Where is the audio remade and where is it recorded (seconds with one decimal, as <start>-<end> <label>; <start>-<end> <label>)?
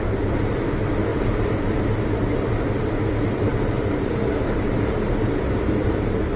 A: 0.0-1.1 recorded; 1.1-1.8 remade; 1.8-3.5 recorded; 3.5-6.4 remade